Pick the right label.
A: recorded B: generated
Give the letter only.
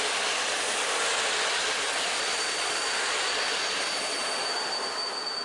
A